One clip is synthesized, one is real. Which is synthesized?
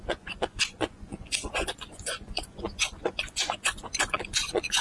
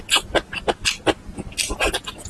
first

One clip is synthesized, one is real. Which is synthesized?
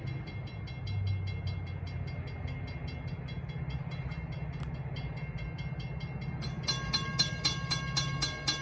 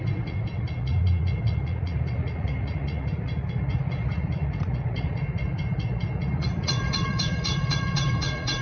second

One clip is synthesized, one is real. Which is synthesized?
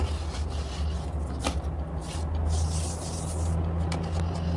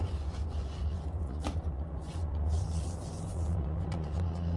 second